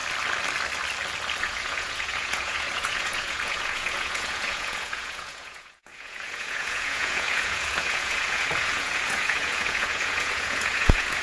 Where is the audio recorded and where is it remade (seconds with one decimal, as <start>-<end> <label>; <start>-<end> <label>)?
0.0-1.4 recorded; 1.4-11.2 remade